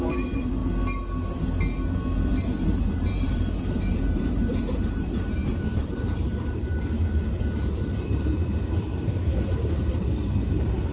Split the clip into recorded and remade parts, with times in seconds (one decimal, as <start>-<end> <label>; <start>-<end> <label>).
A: 0.0-0.6 remade; 0.6-2.4 recorded; 2.4-10.9 remade

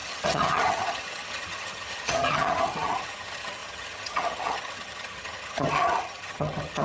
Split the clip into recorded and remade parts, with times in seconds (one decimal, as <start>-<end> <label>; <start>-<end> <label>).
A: 0.0-6.8 remade

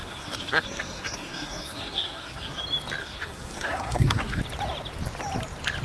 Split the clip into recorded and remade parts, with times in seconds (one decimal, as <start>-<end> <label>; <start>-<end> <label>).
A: 0.0-2.6 remade; 2.6-3.0 recorded; 3.0-4.4 remade; 4.4-5.8 recorded